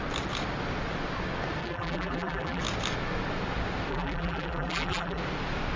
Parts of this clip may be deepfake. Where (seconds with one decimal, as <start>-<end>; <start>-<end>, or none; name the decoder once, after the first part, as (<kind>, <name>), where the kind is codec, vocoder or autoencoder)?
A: 1.6-2.6 (vocoder, BigVGAN v2); 3.9-5.2